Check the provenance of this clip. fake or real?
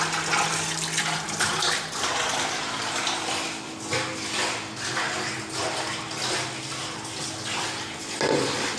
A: real